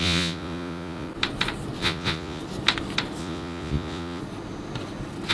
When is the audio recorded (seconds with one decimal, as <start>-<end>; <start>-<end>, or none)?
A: 1.1-1.8; 2.4-3.2; 4.2-5.3